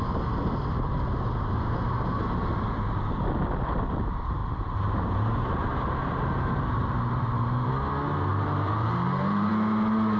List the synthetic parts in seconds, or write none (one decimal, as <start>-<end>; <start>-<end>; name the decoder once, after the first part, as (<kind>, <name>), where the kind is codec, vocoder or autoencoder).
4.4-7.7 (vocoder, BigVGAN v2); 8.3-9.5